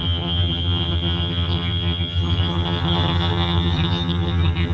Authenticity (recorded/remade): remade